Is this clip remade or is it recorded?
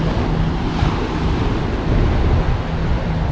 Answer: recorded